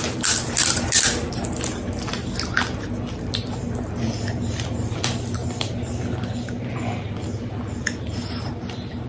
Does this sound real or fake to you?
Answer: real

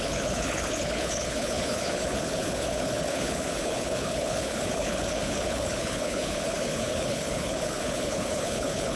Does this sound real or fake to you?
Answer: fake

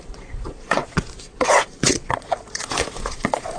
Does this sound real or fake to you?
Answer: fake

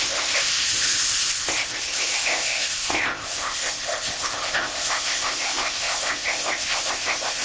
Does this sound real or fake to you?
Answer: fake